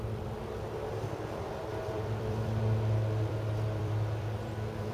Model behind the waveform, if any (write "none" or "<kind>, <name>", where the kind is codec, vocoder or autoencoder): vocoder, BigVGAN v2